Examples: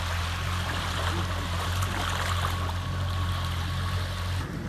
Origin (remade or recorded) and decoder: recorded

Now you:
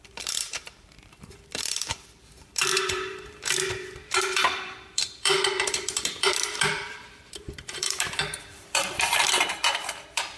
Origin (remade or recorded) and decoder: remade, vocoder, BigVGAN v2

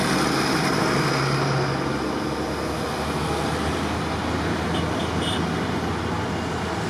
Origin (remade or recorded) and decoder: recorded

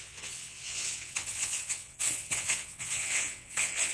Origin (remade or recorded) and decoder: remade, vocoder, WaveNeXt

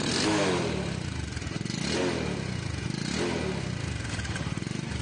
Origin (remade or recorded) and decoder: recorded